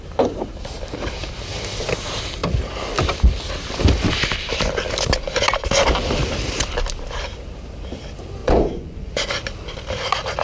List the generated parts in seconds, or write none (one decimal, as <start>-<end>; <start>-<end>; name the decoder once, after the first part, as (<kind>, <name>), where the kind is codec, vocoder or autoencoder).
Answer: 8.4-9.3 (vocoder, Vocos)